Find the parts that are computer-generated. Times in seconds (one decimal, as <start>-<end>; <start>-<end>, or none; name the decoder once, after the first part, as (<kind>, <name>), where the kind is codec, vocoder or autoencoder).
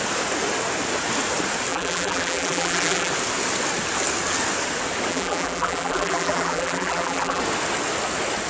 1.7-3.1 (vocoder, BigVGAN v2); 5.1-7.4